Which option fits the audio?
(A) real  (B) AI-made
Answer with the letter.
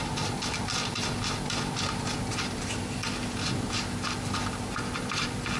A